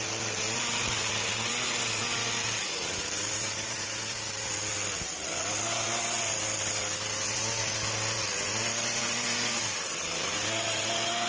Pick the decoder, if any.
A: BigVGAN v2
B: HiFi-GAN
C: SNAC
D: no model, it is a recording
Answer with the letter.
D